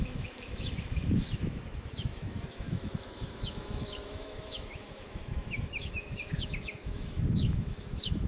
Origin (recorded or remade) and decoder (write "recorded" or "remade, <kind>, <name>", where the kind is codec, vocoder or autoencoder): remade, autoencoder, DAC-VAE